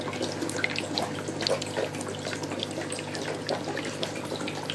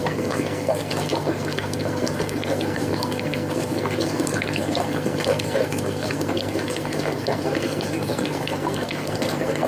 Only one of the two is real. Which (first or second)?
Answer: first